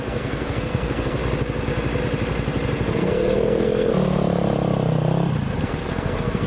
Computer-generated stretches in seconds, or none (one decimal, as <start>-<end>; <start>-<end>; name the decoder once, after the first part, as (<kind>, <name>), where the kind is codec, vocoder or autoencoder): 0.0-1.2 (codec, SNAC); 2.9-3.9; 5.6-6.5